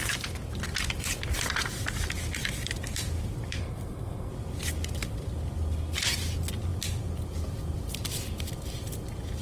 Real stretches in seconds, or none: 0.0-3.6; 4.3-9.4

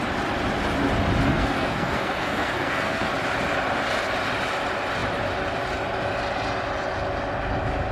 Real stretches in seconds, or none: 0.0-1.3; 3.1-7.9

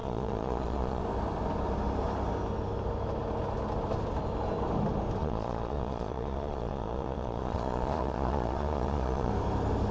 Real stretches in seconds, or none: 1.0-5.2; 9.3-9.9